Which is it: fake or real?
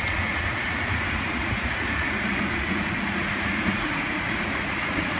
fake